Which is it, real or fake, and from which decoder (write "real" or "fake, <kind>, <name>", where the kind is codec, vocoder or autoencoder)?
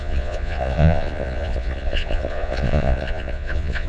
fake, vocoder, Vocos